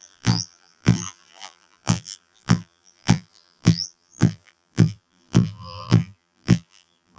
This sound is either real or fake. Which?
fake